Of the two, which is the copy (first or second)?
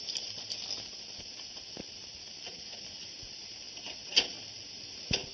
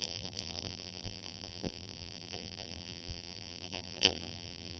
second